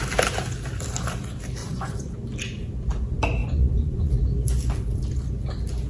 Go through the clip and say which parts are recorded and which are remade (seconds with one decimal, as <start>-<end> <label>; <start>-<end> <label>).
0.0-1.6 recorded; 1.6-2.1 remade; 2.1-3.4 recorded; 3.4-4.1 remade; 4.1-5.9 recorded